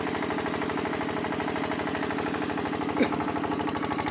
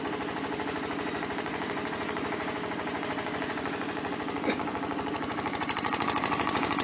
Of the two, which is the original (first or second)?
first